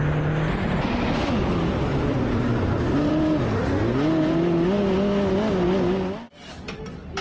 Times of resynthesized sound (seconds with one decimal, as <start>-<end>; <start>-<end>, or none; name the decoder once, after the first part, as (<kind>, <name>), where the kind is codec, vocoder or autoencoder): 1.9-3.1 (vocoder, BigVGAN v2)